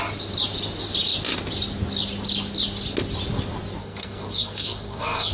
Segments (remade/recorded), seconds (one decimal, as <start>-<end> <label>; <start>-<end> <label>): 0.0-3.8 recorded; 3.8-5.3 remade